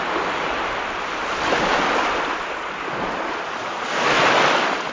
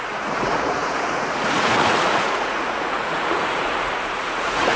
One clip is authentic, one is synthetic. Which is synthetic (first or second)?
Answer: second